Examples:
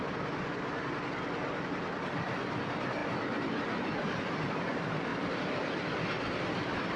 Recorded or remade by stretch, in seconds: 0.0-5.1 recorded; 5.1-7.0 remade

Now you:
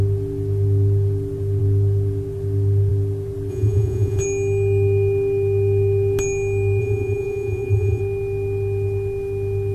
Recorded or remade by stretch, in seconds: 0.0-3.5 recorded; 3.5-4.2 remade; 4.2-6.8 recorded; 6.8-8.0 remade; 8.0-9.7 recorded

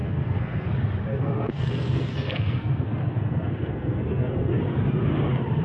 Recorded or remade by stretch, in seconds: 0.0-0.7 remade; 0.7-1.1 recorded; 1.1-4.5 remade; 4.5-5.6 recorded

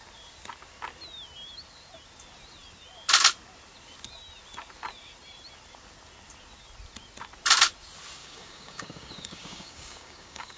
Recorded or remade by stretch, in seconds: 0.0-8.2 recorded; 8.2-10.6 remade

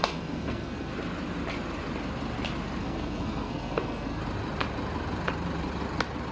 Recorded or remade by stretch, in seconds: 0.0-0.9 remade; 0.9-2.8 recorded; 2.8-4.2 remade; 4.2-6.3 recorded

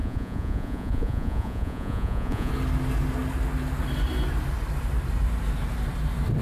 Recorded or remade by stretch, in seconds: 0.0-2.5 remade; 2.5-6.4 recorded